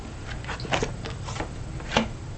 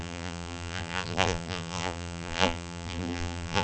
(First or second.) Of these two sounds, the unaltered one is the first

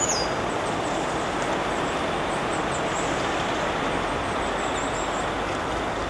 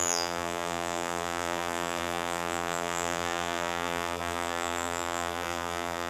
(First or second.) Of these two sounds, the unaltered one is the first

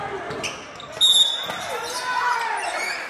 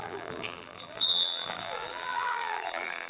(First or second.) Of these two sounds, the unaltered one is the first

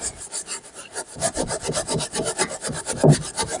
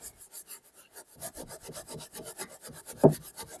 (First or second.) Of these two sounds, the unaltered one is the second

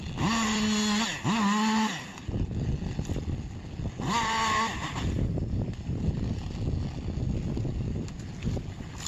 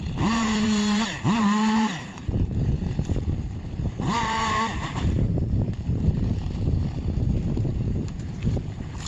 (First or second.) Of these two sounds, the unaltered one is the first